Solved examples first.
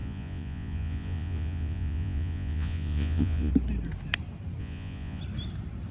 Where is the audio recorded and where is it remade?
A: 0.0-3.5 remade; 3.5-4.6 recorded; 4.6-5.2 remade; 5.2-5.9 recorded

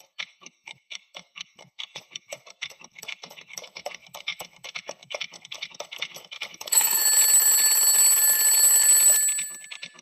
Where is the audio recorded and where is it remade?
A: 0.0-7.0 remade; 7.0-10.0 recorded

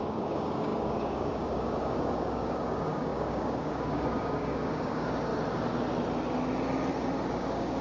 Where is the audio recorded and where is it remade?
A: 0.0-5.3 remade; 5.3-7.3 recorded; 7.3-7.8 remade

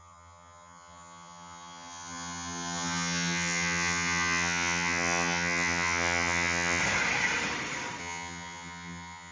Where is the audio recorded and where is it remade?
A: 0.0-6.8 remade; 6.8-8.0 recorded; 8.0-9.3 remade

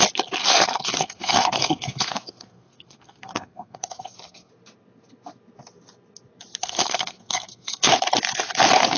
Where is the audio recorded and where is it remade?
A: 0.0-0.4 recorded; 0.4-4.5 remade; 4.5-6.6 recorded; 6.6-7.9 remade; 7.9-9.0 recorded

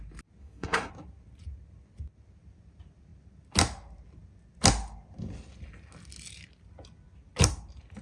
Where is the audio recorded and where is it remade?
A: 0.0-0.4 recorded; 0.4-0.9 remade; 0.9-8.0 recorded

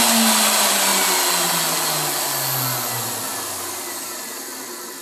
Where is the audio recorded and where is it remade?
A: 0.0-5.0 recorded